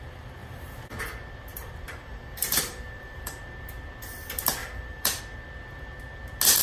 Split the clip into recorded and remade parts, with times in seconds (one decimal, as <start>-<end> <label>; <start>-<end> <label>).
0.0-0.4 recorded; 0.4-1.0 remade; 1.0-1.5 recorded; 1.5-3.4 remade; 3.4-4.6 recorded; 4.6-5.2 remade; 5.2-6.6 recorded